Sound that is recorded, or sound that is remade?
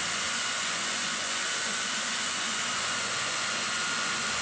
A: remade